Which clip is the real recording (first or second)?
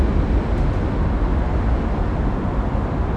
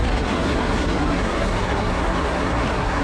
first